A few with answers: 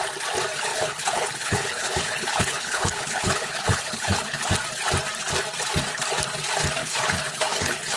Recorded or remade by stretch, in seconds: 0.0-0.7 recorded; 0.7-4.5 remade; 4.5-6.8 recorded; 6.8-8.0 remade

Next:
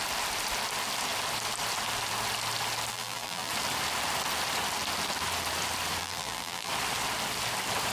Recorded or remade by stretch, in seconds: 0.0-2.9 recorded; 2.9-3.5 remade; 3.5-6.0 recorded; 6.0-6.7 remade; 6.7-7.9 recorded

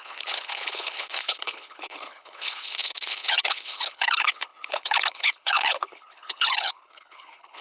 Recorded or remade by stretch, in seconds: 0.0-7.6 remade

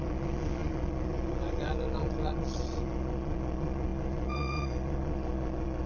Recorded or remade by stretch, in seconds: 0.0-5.9 remade

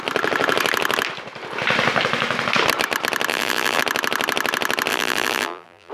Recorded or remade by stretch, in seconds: 0.0-3.3 recorded; 3.3-3.8 remade; 3.8-4.9 recorded; 4.9-5.9 remade

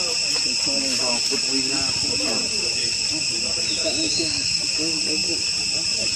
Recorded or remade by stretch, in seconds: 0.0-3.8 recorded; 3.8-4.6 remade; 4.6-6.2 recorded